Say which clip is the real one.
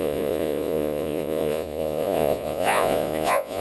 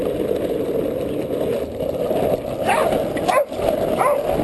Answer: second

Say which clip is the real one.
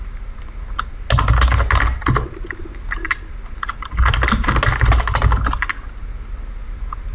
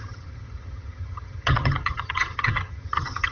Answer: first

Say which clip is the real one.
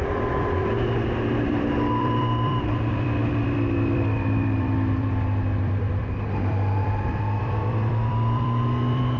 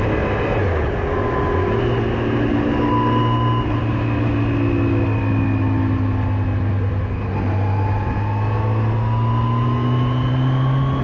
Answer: second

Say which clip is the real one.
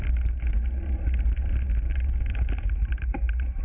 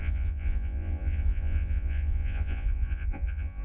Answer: first